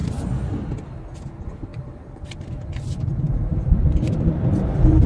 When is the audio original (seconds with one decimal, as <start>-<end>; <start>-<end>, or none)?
0.0-0.6